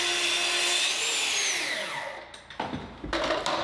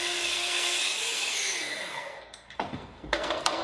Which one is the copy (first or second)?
second